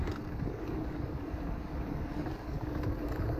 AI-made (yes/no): yes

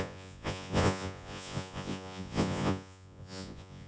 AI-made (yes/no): yes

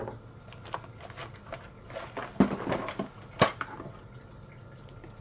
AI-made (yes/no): no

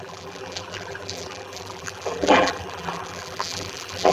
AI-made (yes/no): yes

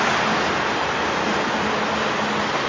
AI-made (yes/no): no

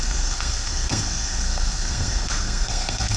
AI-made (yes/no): yes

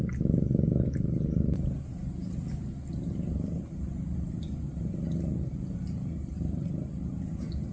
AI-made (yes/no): no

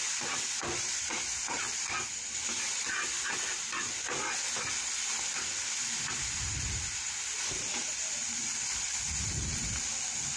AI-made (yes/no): no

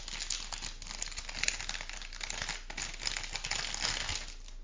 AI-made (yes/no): no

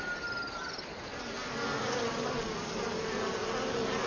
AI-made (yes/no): no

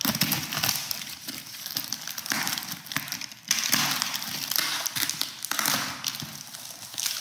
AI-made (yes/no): no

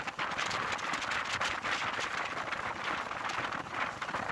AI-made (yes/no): no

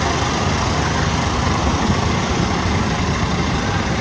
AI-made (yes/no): no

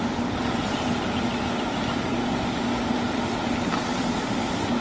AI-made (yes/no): no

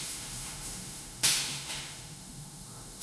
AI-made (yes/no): yes